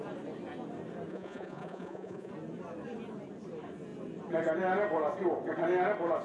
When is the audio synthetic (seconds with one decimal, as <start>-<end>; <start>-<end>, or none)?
1.1-2.3